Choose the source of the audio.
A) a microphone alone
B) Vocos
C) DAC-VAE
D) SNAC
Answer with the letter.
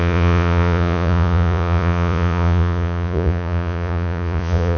B